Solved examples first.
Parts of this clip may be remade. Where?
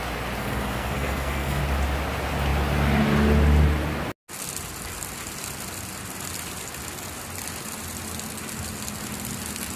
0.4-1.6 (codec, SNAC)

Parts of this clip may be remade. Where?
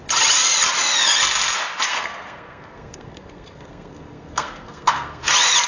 1.9-5.3 (codec, SNAC)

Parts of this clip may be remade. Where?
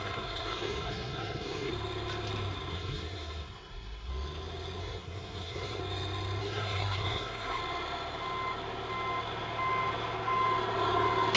0.0-1.7 (codec, SNAC); 2.7-4.1; 4.8-5.8; 6.4-7.6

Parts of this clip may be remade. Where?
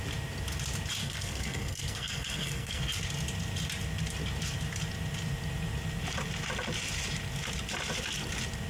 1.0-2.8 (codec, SNAC)